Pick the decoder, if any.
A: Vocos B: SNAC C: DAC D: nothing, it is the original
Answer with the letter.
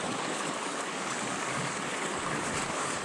C